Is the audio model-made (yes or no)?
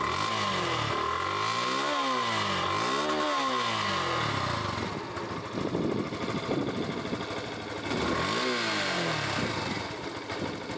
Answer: no